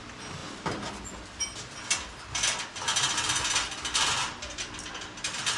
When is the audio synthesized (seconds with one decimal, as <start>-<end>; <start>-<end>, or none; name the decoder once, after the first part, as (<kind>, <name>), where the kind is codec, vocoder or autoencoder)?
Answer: 0.4-0.9 (vocoder, BigVGAN v2)